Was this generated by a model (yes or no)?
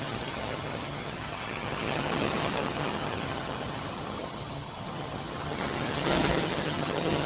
yes